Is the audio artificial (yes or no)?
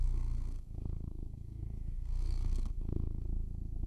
yes